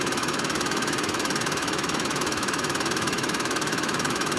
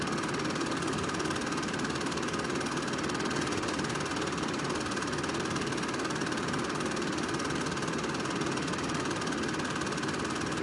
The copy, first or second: first